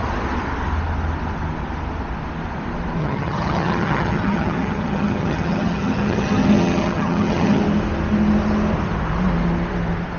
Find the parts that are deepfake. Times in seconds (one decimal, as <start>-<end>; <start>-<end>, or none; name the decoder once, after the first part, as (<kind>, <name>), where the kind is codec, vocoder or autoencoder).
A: 3.0-7.6 (vocoder, HiFi-GAN)